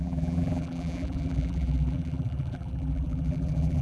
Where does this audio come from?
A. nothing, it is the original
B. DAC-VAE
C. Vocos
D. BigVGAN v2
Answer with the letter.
D